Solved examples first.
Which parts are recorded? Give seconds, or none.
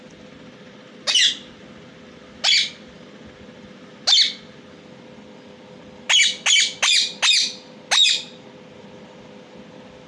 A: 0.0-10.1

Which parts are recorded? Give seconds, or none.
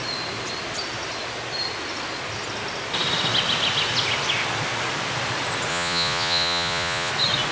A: 0.0-5.7; 7.1-7.5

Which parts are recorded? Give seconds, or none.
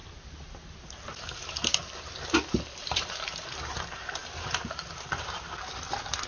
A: 0.0-6.3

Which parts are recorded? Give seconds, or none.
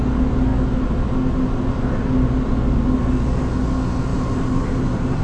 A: 0.0-4.1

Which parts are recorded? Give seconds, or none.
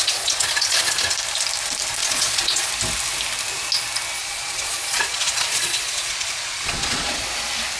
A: 1.1-2.0; 2.7-4.2; 7.2-7.8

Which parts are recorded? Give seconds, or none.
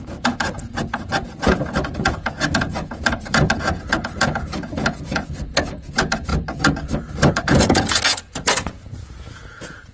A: 6.3-7.3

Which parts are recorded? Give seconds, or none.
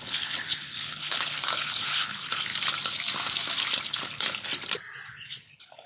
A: 2.5-3.6; 4.5-5.1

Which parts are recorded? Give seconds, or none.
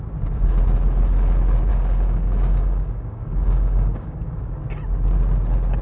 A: 0.0-1.7; 4.5-5.8